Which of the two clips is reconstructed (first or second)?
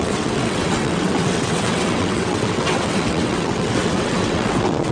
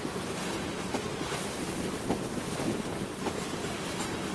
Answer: first